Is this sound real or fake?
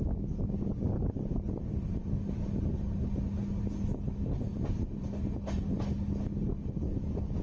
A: real